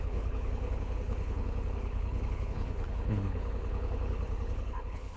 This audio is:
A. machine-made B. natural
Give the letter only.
A